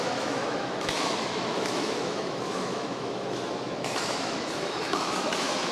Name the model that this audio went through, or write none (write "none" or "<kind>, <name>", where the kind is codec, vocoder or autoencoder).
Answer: autoencoder, DAC-VAE